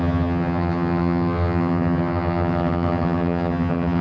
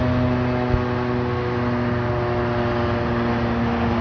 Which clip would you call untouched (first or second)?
second